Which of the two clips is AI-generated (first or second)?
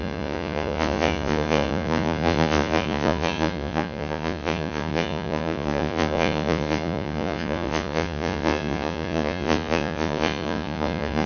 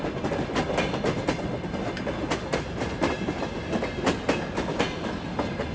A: first